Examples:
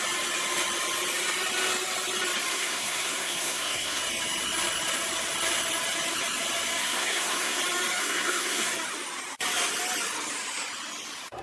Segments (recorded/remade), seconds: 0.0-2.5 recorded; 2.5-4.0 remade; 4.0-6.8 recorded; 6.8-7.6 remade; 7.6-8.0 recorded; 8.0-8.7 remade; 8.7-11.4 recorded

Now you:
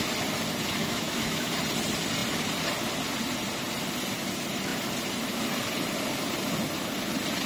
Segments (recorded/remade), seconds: 0.0-0.8 recorded; 0.8-1.5 remade; 1.5-7.5 recorded

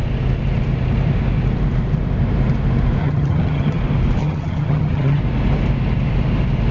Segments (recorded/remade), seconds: 0.0-3.0 recorded; 3.0-3.8 remade; 3.8-4.2 recorded; 4.2-5.2 remade; 5.2-6.7 recorded

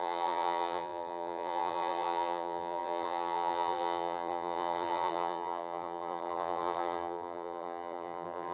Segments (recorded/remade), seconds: 0.0-8.5 remade

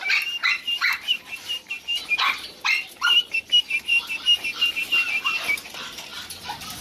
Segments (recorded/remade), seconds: 0.0-6.8 recorded

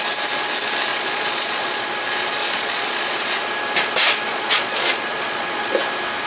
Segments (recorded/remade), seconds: 0.0-0.9 recorded; 0.9-1.9 remade; 1.9-2.4 recorded; 2.4-3.4 remade; 3.4-4.3 recorded; 4.3-5.7 remade; 5.7-6.3 recorded